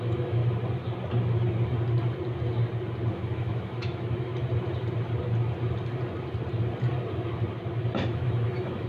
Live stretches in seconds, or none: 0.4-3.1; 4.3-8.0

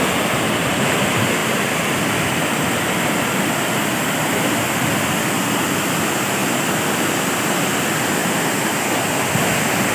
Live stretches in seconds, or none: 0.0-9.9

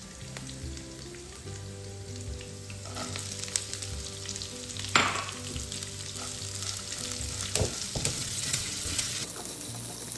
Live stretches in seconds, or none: 0.0-8.2; 9.3-10.2

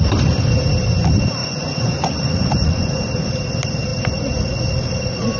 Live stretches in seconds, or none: 0.0-1.4; 3.0-5.4

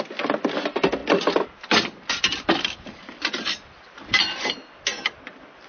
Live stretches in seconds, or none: 0.0-1.0; 4.4-5.7

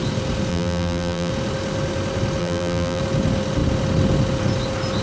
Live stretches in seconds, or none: 0.0-0.5; 1.3-2.4; 3.0-5.0